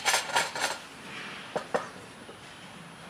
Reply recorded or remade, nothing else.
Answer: recorded